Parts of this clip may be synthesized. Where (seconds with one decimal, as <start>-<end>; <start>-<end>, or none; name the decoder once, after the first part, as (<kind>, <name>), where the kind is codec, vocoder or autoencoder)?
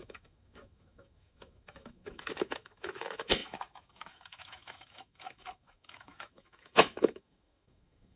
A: 0.0-8.2 (autoencoder, DAC-VAE)